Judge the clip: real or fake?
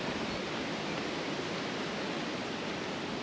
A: real